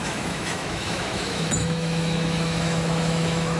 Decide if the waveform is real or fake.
fake